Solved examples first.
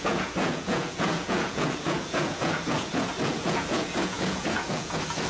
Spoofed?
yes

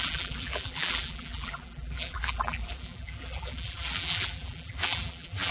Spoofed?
yes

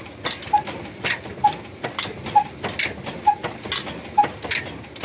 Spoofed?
no